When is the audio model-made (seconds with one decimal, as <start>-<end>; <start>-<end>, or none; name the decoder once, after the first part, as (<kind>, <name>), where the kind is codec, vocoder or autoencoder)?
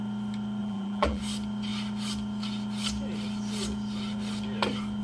0.6-1.2 (vocoder, BigVGAN v2)